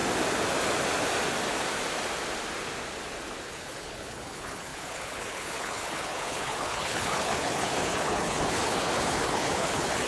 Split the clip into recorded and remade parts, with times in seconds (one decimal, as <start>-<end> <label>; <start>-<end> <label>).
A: 0.0-3.4 recorded; 3.4-10.1 remade